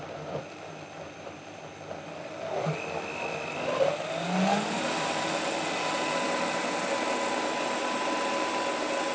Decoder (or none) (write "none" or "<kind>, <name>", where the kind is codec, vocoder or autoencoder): none